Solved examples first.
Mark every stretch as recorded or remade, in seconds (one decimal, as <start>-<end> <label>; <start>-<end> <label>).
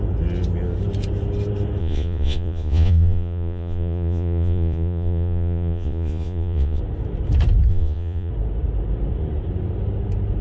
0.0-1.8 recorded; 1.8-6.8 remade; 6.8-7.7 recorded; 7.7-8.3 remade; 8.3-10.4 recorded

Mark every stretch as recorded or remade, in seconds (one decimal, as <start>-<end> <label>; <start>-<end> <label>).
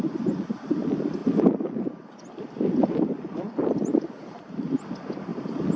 0.0-5.8 recorded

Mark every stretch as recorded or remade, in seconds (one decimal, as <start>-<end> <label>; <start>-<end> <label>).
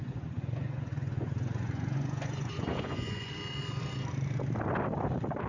0.0-3.3 remade; 3.3-5.5 recorded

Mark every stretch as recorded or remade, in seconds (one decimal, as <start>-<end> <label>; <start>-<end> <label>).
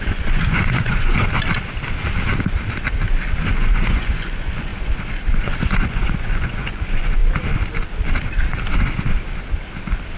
0.0-1.1 remade; 1.1-3.5 recorded; 3.5-4.7 remade; 4.7-5.4 recorded; 5.4-7.2 remade; 7.2-10.2 recorded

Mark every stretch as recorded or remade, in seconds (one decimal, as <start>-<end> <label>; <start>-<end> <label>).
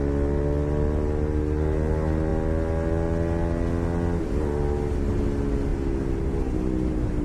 0.0-7.2 recorded